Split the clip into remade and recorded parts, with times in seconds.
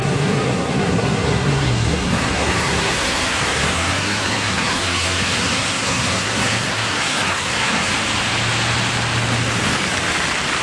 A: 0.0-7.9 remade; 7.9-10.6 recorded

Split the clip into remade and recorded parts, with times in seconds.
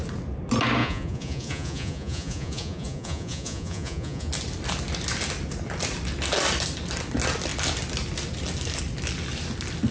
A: 0.0-0.8 recorded; 0.8-4.3 remade; 4.3-9.9 recorded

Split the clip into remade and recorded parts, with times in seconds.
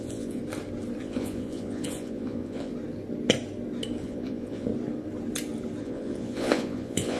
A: 0.0-0.4 remade; 0.4-1.0 recorded; 1.0-2.7 remade; 2.7-4.0 recorded; 4.0-4.7 remade; 4.7-5.8 recorded; 5.8-7.2 remade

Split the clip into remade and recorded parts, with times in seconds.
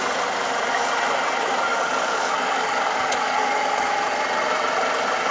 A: 0.0-1.7 recorded; 1.7-3.9 remade; 3.9-5.3 recorded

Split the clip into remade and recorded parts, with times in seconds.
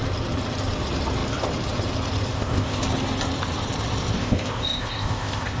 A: 0.0-2.3 recorded; 2.3-2.8 remade; 2.8-4.2 recorded; 4.2-5.6 remade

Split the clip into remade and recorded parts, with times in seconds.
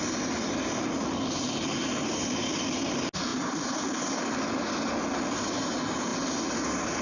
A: 0.0-7.0 recorded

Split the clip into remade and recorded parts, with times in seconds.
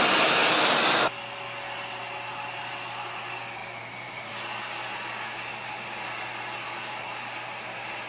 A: 0.0-3.6 recorded; 3.6-4.4 remade; 4.4-8.1 recorded